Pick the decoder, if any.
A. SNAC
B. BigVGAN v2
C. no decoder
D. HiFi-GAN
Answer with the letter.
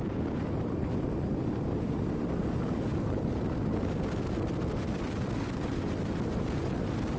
C